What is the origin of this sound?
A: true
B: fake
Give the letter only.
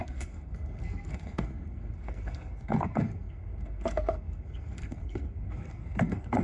B